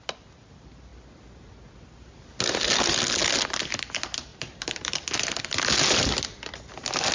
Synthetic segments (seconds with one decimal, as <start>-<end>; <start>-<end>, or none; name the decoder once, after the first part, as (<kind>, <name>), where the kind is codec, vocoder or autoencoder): 4.3-5.0 (vocoder, BigVGAN v2)